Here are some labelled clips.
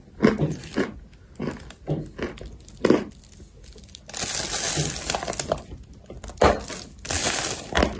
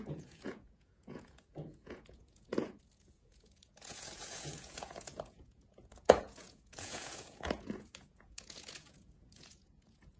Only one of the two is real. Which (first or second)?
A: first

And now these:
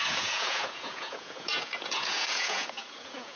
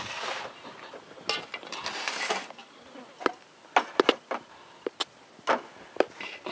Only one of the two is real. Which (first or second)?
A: second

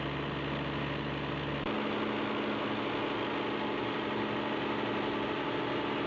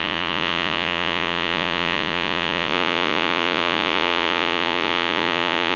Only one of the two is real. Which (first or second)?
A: first